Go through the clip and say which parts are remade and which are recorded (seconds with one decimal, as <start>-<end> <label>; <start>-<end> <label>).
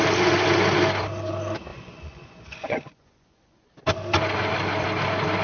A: 0.0-1.7 recorded; 1.7-3.7 remade; 3.7-5.4 recorded